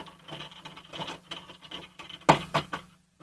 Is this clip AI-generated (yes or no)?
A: no